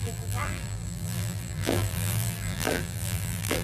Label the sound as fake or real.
fake